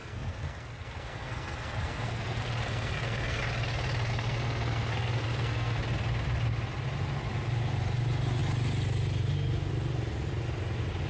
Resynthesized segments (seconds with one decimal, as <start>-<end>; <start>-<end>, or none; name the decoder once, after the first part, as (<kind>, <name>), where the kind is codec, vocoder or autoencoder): 0.0-3.4 (codec, SNAC); 4.1-5.8